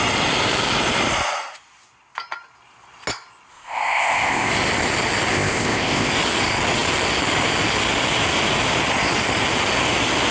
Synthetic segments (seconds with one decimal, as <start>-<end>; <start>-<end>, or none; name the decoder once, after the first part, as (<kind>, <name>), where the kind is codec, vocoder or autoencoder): 3.5-4.5 (codec, ZipCodec); 5.3-6.1